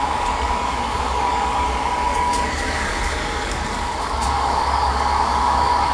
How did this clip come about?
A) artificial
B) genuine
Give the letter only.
A